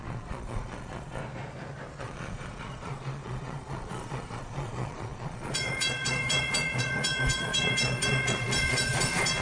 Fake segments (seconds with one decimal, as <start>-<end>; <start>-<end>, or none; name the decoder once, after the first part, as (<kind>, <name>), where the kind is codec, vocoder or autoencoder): 0.0-1.2 (vocoder, Vocos); 2.0-9.4